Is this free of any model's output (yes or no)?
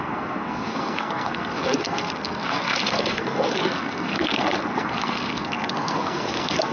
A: no